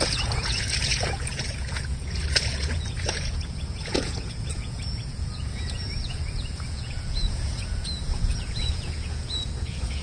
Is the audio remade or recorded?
remade